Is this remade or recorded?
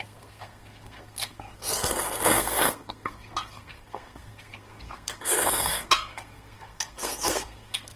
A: remade